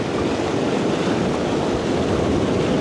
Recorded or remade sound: recorded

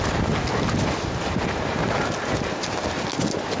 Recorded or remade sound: recorded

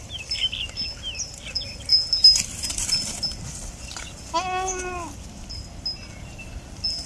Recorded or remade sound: recorded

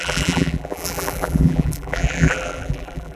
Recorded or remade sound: remade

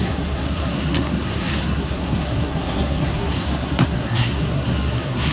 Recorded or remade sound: remade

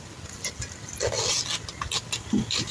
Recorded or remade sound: recorded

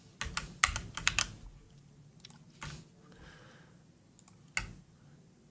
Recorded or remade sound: recorded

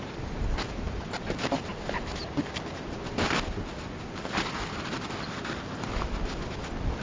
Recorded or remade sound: recorded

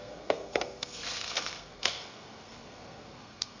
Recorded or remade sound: remade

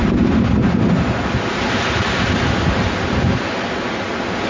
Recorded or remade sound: remade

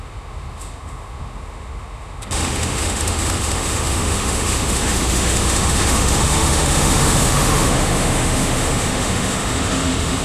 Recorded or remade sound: remade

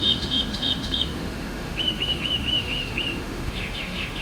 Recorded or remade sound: remade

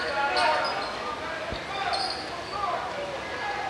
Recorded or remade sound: recorded